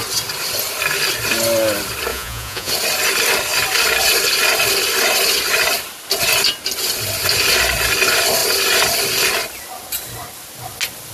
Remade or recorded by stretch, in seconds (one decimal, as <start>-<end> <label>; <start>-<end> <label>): 0.0-2.1 recorded; 2.1-2.7 remade; 2.7-11.1 recorded